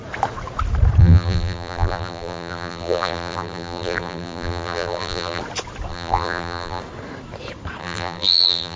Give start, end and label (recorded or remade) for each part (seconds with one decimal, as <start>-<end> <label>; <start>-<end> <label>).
0.0-1.0 recorded; 1.0-5.4 remade; 5.4-5.9 recorded; 5.9-6.8 remade; 6.8-7.8 recorded; 7.8-8.8 remade